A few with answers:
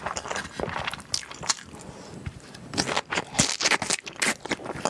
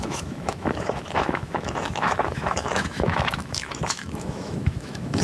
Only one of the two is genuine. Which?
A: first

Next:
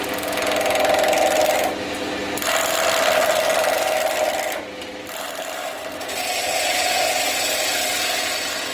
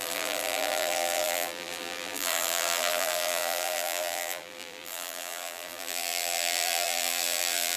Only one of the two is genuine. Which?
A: first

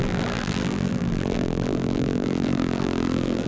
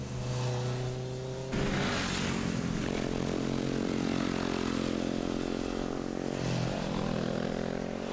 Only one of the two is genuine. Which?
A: second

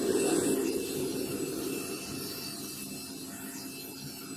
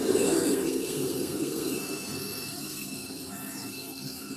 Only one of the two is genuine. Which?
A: first